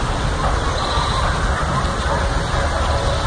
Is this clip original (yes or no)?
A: yes